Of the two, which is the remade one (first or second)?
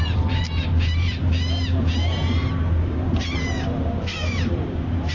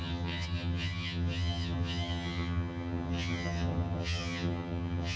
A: second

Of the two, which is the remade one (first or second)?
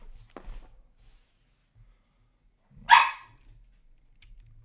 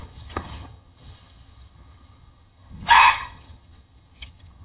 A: second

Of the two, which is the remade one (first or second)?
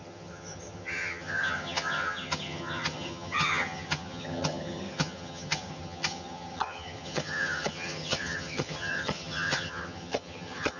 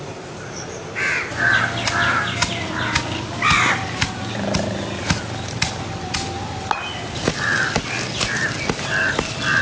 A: first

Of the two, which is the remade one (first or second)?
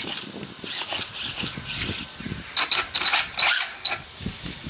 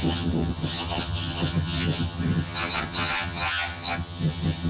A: second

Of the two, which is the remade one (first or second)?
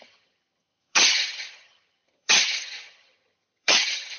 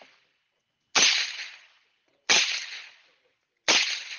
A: first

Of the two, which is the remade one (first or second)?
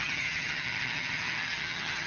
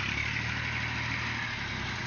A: first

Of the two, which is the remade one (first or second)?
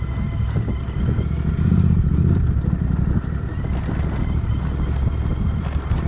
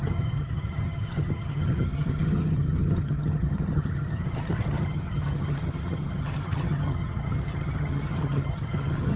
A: second